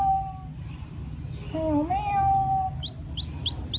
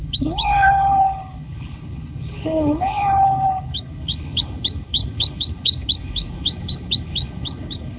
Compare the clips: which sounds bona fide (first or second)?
first